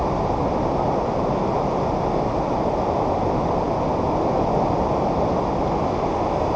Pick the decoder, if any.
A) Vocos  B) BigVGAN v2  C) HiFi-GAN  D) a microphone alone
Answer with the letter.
D